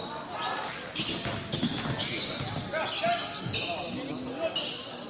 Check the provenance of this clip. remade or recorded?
recorded